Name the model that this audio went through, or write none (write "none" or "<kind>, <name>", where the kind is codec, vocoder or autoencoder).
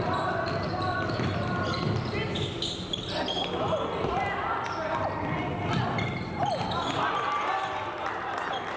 none